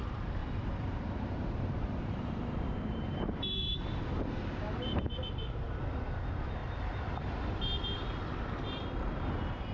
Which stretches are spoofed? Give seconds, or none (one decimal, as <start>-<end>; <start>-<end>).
0.4-5.0